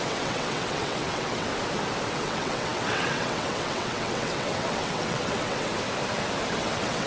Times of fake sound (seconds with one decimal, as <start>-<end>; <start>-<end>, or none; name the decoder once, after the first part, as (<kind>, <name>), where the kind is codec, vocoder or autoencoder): 0.0-1.5 (vocoder, WaveNeXt); 2.1-5.7; 6.5-7.1